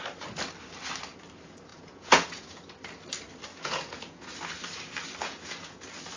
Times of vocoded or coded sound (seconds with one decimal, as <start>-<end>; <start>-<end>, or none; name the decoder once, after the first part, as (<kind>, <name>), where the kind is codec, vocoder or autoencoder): 1.7-2.6 (vocoder, Vocos); 3.5-4.2; 5.2-5.8